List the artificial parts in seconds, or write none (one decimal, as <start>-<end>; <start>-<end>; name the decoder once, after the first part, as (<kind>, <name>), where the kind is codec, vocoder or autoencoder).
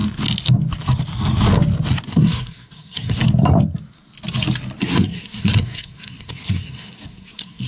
2.1-3.2 (codec, SNAC); 4.8-7.7